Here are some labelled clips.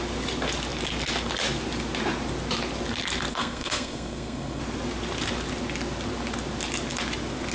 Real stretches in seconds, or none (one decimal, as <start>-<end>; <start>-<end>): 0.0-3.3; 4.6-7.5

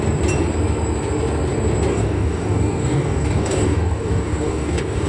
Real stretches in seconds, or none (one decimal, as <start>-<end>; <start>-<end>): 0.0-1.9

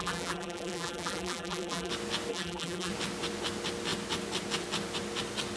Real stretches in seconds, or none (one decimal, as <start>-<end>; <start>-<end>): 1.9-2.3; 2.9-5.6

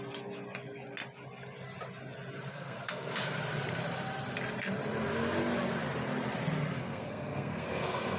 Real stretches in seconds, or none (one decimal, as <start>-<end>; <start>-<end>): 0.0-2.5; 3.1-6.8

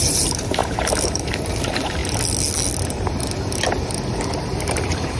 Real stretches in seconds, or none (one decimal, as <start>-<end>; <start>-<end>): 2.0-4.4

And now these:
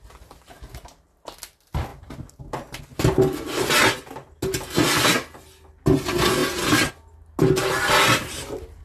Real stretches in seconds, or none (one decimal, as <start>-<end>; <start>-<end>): 0.0-8.8